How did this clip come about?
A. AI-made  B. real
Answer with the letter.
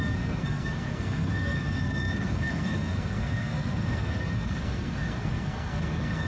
A